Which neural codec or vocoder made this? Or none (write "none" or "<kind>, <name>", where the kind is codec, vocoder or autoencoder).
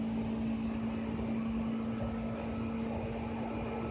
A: none